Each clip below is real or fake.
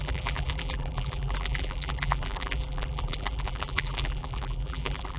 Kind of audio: fake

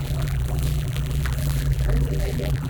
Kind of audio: fake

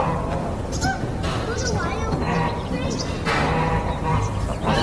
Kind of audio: fake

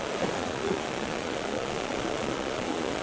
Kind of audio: fake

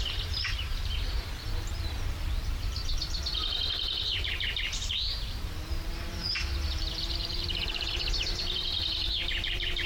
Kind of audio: fake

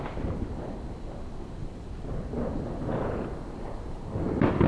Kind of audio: real